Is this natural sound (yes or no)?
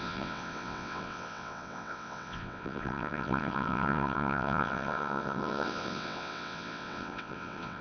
no